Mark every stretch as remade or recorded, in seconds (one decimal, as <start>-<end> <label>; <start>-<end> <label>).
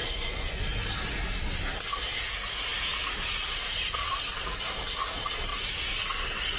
0.0-0.6 remade; 0.6-6.6 recorded